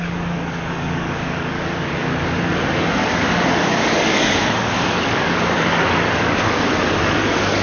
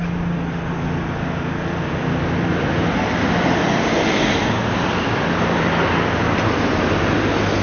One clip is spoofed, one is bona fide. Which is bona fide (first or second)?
second